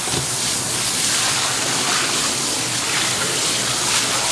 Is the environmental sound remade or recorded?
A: recorded